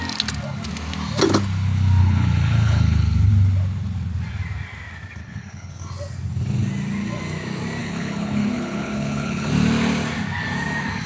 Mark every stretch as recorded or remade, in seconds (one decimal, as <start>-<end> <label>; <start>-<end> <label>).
0.0-2.0 recorded; 2.0-3.3 remade; 3.3-5.2 recorded; 5.2-5.7 remade; 5.7-7.8 recorded; 7.8-9.5 remade; 9.5-11.1 recorded